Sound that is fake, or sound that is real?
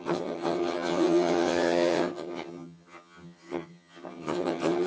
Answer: fake